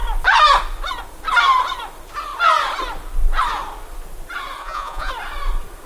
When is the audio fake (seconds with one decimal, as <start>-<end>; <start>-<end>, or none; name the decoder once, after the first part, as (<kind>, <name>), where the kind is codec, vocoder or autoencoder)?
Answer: 4.6-5.1 (vocoder, Vocos)